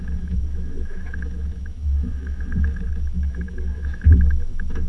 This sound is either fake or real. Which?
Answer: fake